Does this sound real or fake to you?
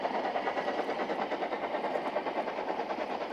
real